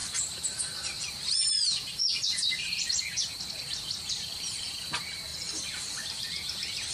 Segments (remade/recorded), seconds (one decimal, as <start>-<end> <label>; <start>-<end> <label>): 0.0-4.1 recorded; 4.1-6.9 remade